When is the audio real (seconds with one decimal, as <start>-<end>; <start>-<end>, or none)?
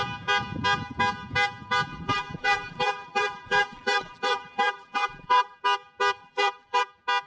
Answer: 0.0-1.9; 5.6-6.2; 6.8-7.3